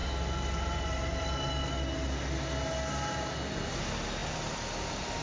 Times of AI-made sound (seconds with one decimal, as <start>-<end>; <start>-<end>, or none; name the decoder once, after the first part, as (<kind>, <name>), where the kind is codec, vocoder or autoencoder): 4.2-5.2 (vocoder, BigVGAN v2)